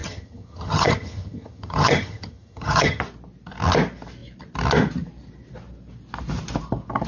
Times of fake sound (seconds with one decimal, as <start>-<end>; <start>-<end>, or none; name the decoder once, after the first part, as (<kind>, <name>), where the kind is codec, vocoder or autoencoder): 0.0-3.0 (vocoder, HiFi-GAN)